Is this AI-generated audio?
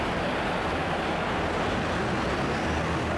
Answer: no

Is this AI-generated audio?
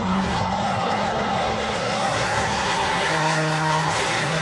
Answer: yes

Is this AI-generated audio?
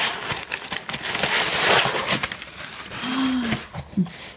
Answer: no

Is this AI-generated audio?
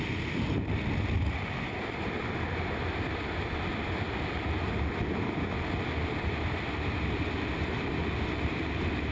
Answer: no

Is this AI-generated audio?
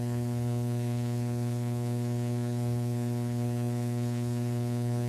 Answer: yes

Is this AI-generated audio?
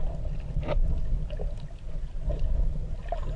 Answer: no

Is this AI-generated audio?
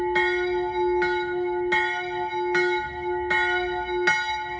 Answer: no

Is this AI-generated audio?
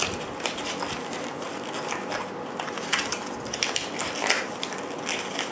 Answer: no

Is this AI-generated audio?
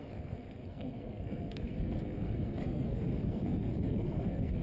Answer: yes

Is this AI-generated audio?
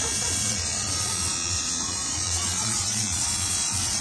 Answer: yes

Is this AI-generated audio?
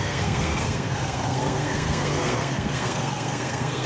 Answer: yes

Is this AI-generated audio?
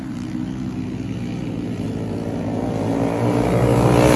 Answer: no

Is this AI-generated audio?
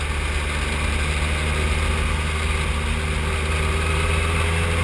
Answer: no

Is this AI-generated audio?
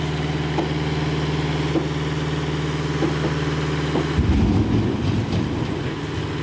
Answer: no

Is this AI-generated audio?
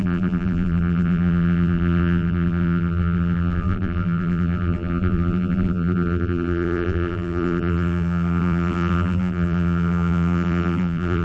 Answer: yes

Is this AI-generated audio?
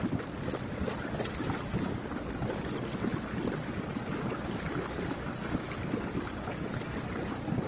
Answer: no